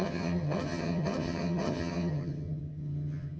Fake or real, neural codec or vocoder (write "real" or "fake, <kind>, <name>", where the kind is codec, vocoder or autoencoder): fake, vocoder, HiFi-GAN